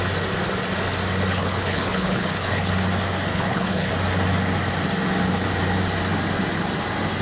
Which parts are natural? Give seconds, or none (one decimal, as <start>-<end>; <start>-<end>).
0.0-1.3; 2.7-3.3; 3.9-7.2